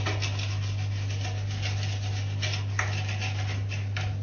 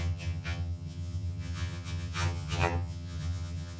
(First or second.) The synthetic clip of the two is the second